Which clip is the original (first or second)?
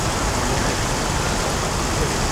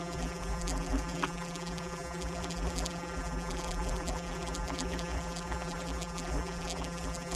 first